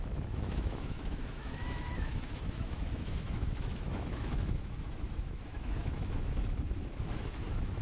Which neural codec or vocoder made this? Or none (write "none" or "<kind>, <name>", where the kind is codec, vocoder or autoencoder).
autoencoder, DAC-VAE